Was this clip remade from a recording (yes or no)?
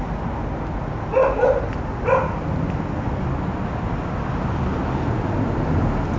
no